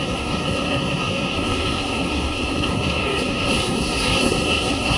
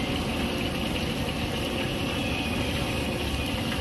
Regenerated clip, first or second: first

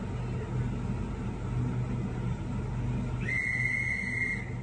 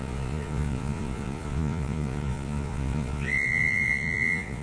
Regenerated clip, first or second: second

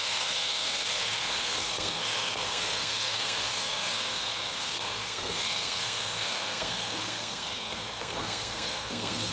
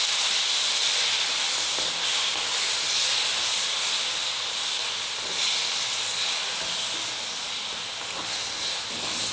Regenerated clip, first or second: first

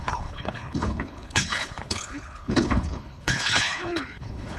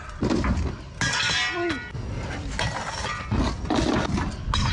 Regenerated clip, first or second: first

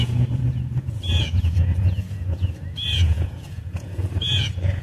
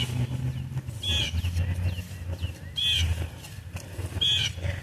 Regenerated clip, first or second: first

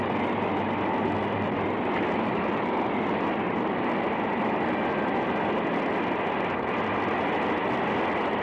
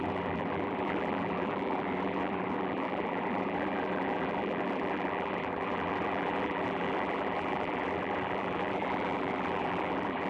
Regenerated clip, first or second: second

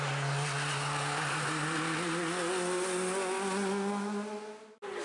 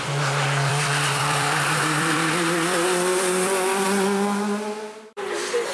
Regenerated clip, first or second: second